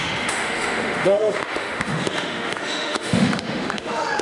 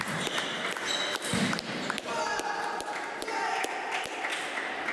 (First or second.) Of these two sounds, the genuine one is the second